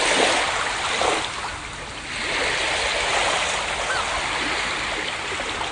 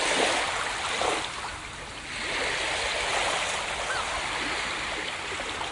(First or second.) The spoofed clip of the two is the second